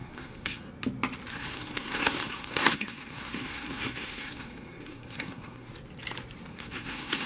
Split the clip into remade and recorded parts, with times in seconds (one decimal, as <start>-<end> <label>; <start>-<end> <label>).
0.0-0.6 remade; 0.6-1.3 recorded; 1.3-5.7 remade; 5.7-6.5 recorded; 6.5-7.3 remade